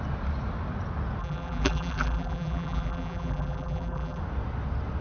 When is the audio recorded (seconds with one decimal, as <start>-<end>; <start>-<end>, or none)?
0.0-1.2; 4.2-5.0